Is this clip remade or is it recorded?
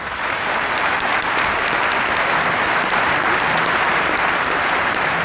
remade